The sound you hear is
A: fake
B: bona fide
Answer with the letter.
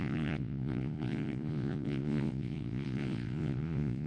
A